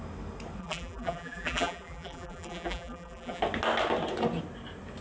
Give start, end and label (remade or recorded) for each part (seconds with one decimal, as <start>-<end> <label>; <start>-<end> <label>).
0.0-0.6 recorded; 0.6-3.4 remade; 3.4-5.0 recorded